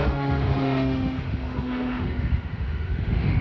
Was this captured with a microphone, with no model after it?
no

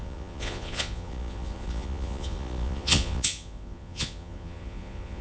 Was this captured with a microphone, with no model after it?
no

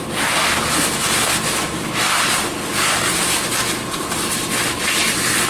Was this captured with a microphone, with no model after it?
yes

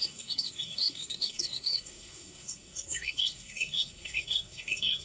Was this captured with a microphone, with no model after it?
no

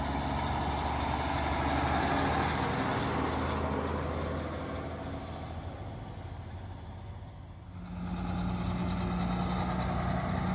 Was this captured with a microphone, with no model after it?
yes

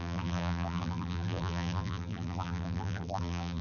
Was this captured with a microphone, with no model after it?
no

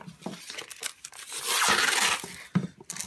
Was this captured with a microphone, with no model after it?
yes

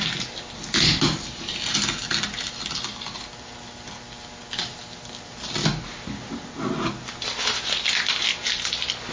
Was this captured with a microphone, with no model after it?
yes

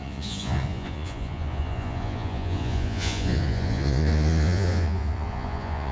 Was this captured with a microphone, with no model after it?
no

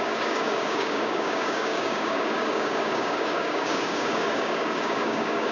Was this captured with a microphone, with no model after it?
no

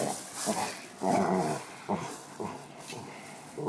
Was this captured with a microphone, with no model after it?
yes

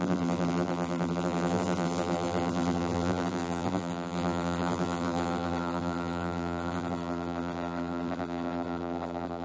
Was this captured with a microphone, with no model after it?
no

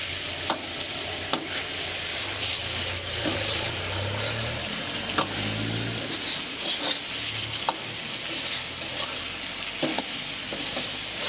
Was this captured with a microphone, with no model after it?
yes